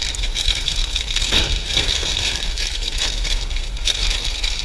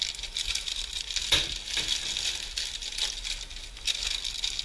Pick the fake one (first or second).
first